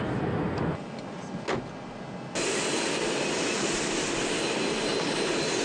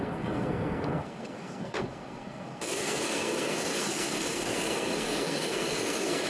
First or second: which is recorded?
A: first